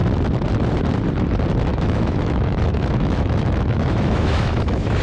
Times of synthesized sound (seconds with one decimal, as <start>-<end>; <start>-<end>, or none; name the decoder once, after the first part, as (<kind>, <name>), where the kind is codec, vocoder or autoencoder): 1.7-5.0 (autoencoder, DAC-VAE)